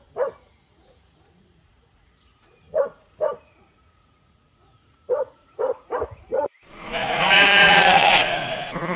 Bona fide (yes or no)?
no